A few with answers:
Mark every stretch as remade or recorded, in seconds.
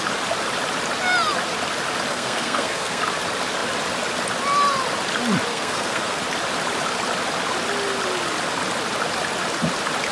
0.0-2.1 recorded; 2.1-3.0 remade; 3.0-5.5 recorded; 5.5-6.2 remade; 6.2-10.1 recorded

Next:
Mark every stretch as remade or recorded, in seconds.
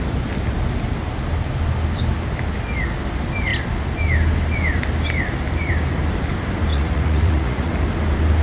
0.0-6.7 recorded; 6.7-7.7 remade; 7.7-8.4 recorded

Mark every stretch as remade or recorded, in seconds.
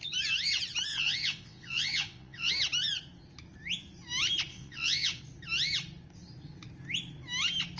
0.0-0.9 recorded; 0.9-2.5 remade; 2.5-4.5 recorded; 4.5-5.2 remade; 5.2-7.8 recorded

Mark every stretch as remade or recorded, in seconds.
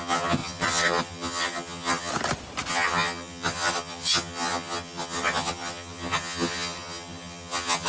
0.0-2.1 remade; 2.1-2.7 recorded; 2.7-7.9 remade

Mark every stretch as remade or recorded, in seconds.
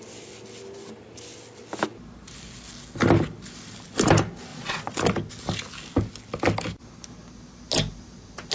0.0-4.5 recorded; 4.5-5.0 remade; 5.0-8.5 recorded